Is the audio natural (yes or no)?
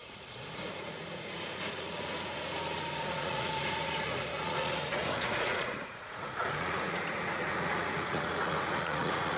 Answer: no